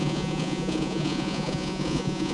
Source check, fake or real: fake